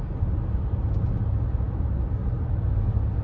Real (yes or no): yes